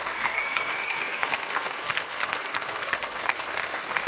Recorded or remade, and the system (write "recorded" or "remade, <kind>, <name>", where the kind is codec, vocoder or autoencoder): remade, codec, SNAC